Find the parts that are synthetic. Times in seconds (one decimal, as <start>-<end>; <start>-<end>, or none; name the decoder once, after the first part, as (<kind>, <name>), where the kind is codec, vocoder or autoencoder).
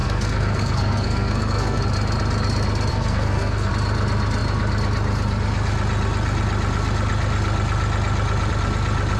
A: 0.0-1.8 (codec, SNAC); 2.9-3.7